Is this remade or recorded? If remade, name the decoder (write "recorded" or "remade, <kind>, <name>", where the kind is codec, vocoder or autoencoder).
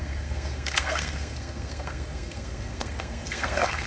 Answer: remade, codec, SNAC